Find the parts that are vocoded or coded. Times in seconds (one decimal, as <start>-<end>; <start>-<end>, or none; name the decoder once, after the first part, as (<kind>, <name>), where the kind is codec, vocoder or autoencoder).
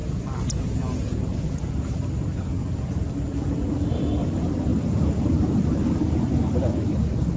4.7-6.1 (vocoder, BigVGAN v2)